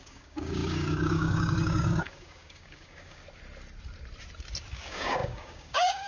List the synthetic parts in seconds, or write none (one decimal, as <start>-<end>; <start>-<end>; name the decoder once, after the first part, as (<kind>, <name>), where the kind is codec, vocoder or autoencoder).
0.0-3.2 (codec, DAC); 4.7-6.1